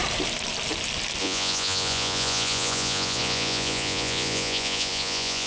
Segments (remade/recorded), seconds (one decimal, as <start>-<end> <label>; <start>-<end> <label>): 0.0-1.2 recorded; 1.2-5.5 remade